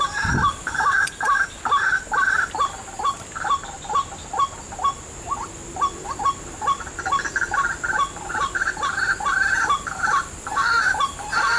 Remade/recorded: recorded